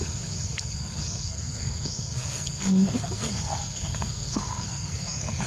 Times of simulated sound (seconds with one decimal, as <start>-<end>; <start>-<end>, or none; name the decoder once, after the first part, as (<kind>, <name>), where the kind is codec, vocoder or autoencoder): 0.0-5.5 (codec, SNAC)